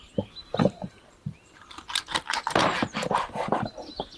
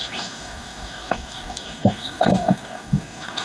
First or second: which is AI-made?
second